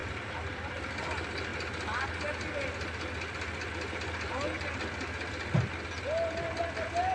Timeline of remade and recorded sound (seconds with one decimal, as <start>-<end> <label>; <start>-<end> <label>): 0.0-1.0 remade; 1.0-7.1 recorded